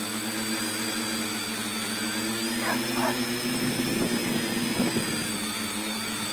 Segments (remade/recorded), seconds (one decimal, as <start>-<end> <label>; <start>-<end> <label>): 0.0-3.0 recorded; 3.0-3.8 remade; 3.8-6.3 recorded